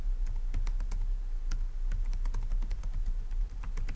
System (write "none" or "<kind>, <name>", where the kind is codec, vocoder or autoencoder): none